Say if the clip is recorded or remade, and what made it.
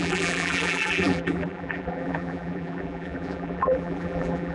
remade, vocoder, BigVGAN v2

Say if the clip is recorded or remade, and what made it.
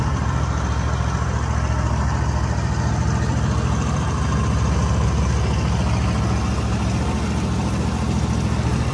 recorded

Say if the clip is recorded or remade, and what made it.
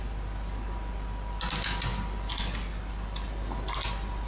recorded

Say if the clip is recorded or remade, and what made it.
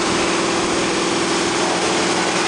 recorded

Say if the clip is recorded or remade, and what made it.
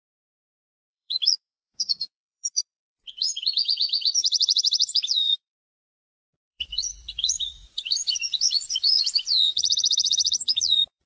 remade, vocoder, Vocos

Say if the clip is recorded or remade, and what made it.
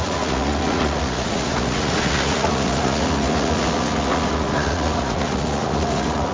remade, vocoder, Vocos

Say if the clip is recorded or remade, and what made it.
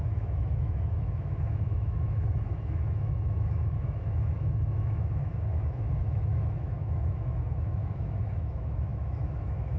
remade, autoencoder, DAC-VAE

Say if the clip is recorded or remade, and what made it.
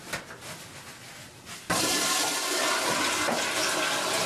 recorded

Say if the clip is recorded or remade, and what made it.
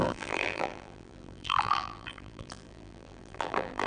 remade, vocoder, BigVGAN v2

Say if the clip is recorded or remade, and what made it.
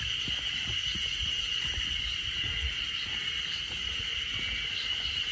recorded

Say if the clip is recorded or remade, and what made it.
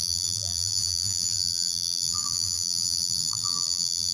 remade, vocoder, BigVGAN v2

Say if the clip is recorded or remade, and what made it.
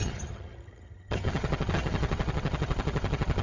remade, vocoder, HiFi-GAN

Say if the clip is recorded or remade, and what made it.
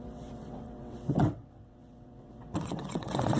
remade, vocoder, WaveNeXt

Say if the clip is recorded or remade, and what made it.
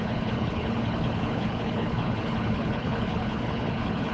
remade, codec, HILCodec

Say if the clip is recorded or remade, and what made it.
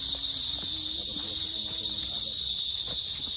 recorded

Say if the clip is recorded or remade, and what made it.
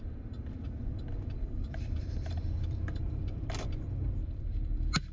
remade, vocoder, BigVGAN v2